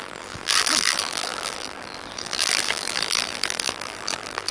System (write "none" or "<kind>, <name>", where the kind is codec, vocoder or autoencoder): vocoder, BigVGAN v2